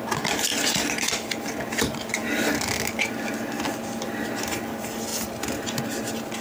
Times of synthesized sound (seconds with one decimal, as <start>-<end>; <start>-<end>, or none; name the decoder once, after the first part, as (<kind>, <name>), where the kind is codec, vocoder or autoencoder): none